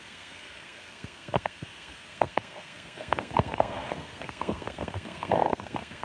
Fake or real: fake